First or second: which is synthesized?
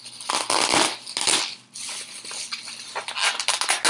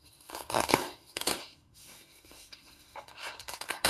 second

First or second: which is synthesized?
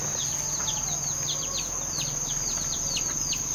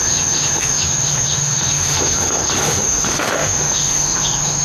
second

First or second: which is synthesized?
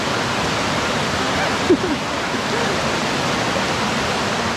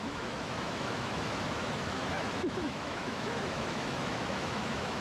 second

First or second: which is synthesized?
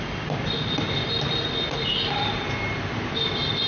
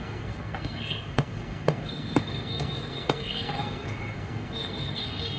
second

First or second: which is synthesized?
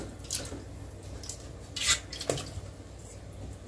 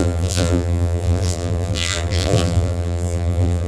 second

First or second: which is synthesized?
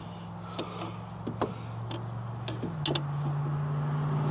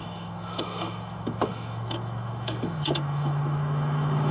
second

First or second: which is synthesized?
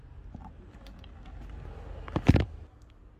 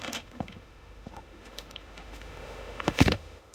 second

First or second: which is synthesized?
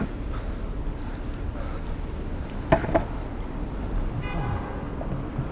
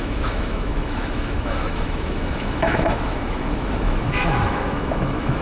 second